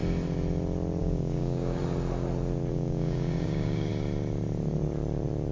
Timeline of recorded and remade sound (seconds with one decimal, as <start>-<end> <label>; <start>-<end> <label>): 0.0-1.0 recorded; 1.0-1.8 remade; 1.8-2.7 recorded; 2.7-3.9 remade; 3.9-5.5 recorded